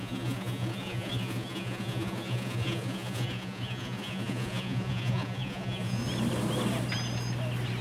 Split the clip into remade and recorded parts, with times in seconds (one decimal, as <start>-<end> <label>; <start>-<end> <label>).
0.0-6.0 remade; 6.0-7.8 recorded